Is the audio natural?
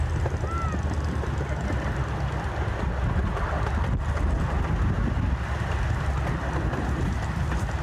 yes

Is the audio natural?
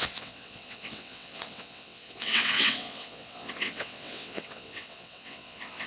no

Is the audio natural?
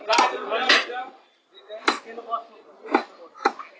yes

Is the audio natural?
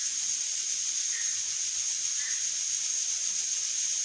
yes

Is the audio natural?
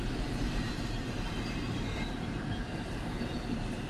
no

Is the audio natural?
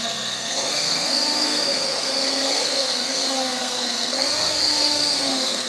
no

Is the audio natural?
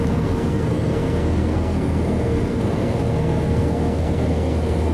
no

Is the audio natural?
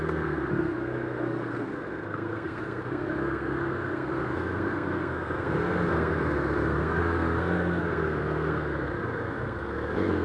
no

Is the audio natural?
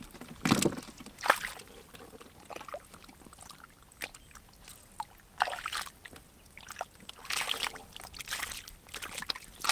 yes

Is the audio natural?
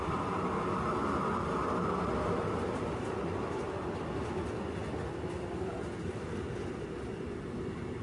yes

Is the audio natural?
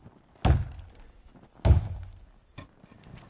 yes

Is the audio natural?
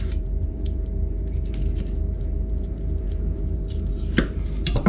no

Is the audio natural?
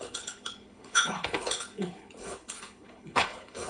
no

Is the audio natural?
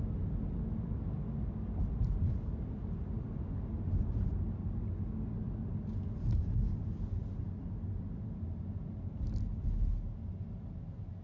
yes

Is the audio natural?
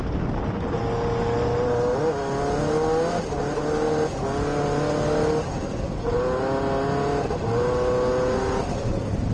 yes